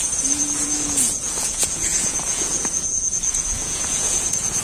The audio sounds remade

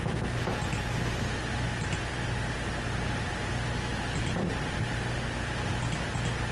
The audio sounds recorded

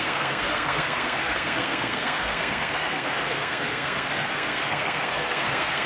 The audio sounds remade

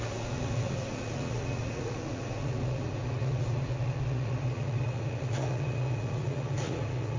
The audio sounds remade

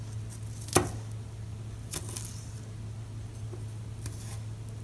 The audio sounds recorded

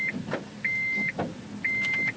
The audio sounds recorded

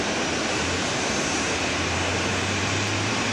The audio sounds remade